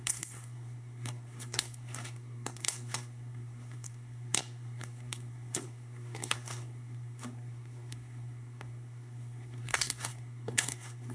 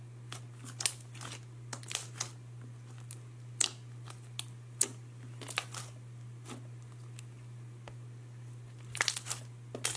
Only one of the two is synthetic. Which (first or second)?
first